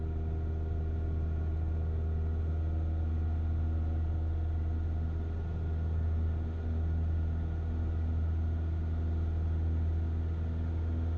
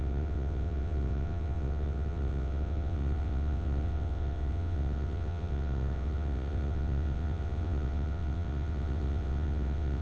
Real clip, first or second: first